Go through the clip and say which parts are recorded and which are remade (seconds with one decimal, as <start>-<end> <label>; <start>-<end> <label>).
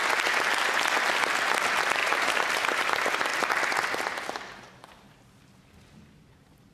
0.0-2.0 recorded; 2.0-2.8 remade; 2.8-6.7 recorded